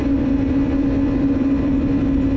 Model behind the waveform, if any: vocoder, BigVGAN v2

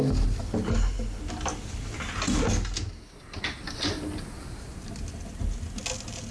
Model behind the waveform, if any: none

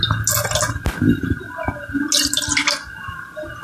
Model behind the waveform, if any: none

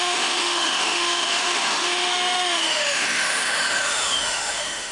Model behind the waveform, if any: autoencoder, DAC-VAE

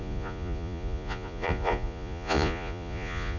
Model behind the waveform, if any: vocoder, Vocos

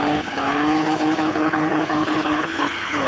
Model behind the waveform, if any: codec, HILCodec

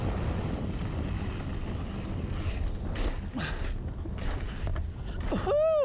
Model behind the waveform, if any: none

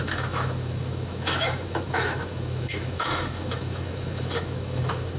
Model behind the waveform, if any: autoencoder, DAC-VAE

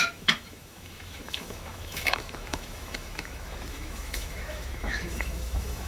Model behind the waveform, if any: autoencoder, DAC-VAE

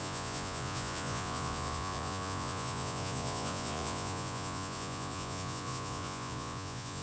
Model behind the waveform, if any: vocoder, Vocos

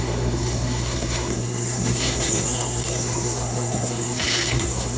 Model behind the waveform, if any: codec, SNAC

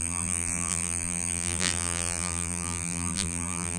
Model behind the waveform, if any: vocoder, BigVGAN v2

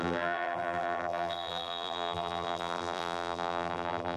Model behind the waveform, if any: vocoder, BigVGAN v2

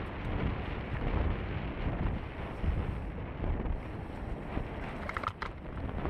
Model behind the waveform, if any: none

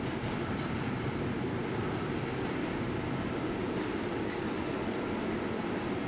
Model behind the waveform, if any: vocoder, BigVGAN v2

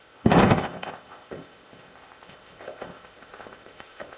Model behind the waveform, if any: codec, ZipCodec